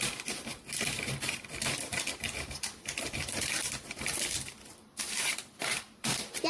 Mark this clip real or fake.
fake